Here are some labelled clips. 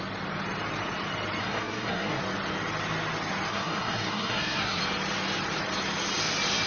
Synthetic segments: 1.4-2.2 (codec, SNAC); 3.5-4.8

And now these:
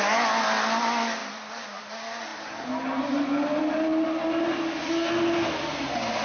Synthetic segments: none

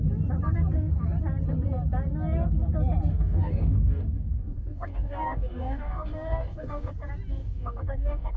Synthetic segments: 3.1-6.9 (codec, DAC); 7.4-8.4

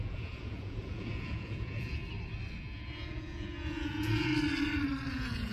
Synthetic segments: 0.0-2.0 (vocoder, Vocos); 2.6-4.3; 5.1-5.5

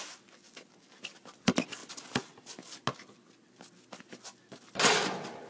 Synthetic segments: none